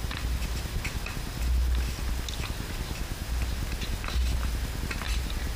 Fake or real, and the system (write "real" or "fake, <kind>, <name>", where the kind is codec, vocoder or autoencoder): real